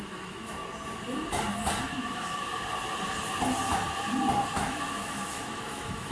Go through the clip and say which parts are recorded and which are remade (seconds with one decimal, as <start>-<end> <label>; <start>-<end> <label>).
0.0-0.6 remade; 0.6-2.0 recorded; 2.0-2.5 remade; 2.5-4.5 recorded; 4.5-6.1 remade